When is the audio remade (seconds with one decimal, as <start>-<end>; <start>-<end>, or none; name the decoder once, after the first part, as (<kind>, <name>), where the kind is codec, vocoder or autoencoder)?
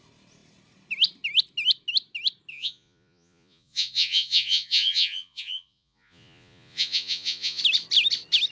2.5-7.6 (vocoder, Vocos)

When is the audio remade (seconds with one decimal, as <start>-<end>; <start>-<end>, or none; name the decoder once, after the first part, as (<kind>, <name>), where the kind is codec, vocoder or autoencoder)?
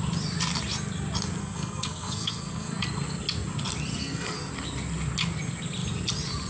1.4-2.8 (codec, SNAC); 3.9-4.5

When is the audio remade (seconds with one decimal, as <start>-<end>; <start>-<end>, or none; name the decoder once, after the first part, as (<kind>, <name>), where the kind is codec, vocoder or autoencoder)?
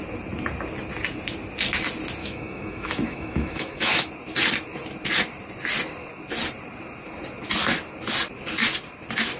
2.2-4.1 (autoencoder, DAC-VAE)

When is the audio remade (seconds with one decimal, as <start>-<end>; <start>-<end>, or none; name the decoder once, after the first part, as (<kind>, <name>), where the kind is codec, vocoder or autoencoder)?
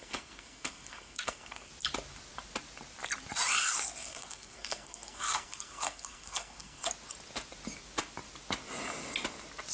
0.0-1.7 (codec, SNAC); 4.0-6.9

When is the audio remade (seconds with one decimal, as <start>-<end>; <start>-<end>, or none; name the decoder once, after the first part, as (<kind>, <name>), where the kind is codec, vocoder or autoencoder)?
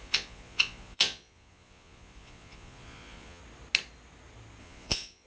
0.0-3.4 (vocoder, Vocos); 4.6-5.3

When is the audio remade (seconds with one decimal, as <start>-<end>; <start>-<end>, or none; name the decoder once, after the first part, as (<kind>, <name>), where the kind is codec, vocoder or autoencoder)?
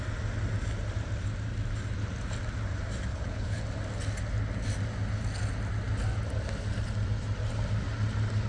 3.1-3.6 (codec, HILCodec)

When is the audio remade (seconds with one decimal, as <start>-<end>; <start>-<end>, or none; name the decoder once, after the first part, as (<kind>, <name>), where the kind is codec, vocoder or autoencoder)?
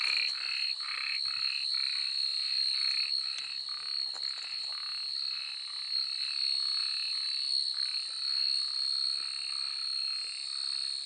none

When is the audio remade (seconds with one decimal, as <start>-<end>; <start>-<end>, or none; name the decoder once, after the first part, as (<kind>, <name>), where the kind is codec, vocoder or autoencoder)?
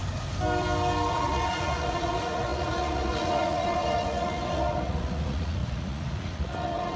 1.1-7.0 (vocoder, Vocos)